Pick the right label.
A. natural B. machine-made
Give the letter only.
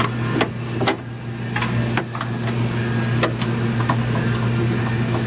A